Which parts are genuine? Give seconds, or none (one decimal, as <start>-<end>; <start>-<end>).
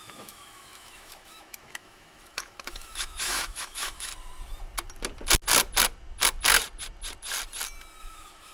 4.1-8.0